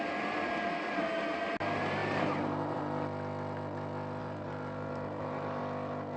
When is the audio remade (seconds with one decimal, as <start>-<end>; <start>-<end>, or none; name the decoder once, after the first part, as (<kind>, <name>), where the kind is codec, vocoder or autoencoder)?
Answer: 2.0-2.8 (vocoder, BigVGAN v2); 4.2-5.6